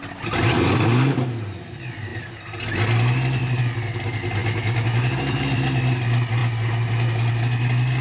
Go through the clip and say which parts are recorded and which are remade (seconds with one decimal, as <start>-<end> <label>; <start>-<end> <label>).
0.0-8.0 recorded